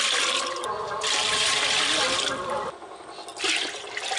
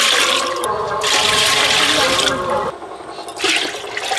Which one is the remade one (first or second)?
first